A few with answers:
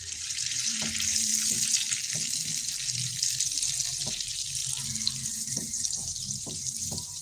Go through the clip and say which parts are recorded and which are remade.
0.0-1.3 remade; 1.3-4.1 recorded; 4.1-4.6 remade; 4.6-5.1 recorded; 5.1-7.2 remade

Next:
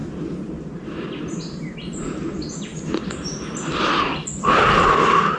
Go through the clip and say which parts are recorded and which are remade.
0.0-5.4 recorded

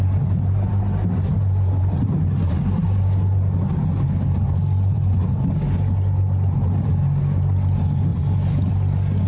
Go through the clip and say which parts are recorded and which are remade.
0.0-8.1 recorded; 8.1-8.7 remade; 8.7-9.3 recorded

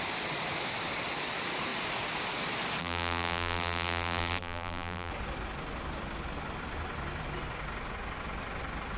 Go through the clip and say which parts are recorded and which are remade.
0.0-2.8 recorded; 2.8-5.1 remade; 5.1-9.0 recorded

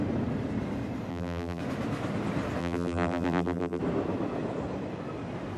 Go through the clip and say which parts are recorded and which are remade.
0.0-1.1 recorded; 1.1-1.6 remade; 1.6-2.6 recorded; 2.6-3.8 remade; 3.8-5.6 recorded

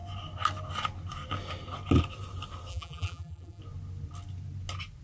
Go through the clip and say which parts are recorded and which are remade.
0.0-2.7 recorded; 2.7-3.6 remade; 3.6-5.0 recorded